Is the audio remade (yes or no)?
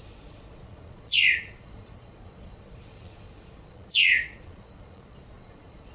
yes